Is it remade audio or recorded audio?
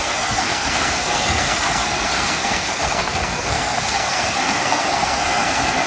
remade